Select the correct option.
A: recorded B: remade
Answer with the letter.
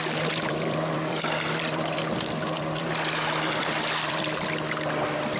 B